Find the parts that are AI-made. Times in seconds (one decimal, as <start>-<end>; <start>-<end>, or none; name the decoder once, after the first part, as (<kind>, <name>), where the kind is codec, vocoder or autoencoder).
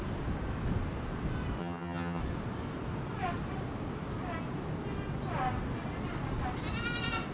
1.6-2.2 (vocoder, HiFi-GAN)